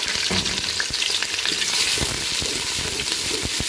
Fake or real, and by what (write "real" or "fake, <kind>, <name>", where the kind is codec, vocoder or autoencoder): real